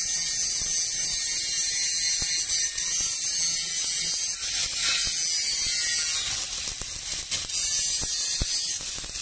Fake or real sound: real